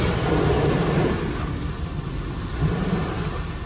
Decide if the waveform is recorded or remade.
recorded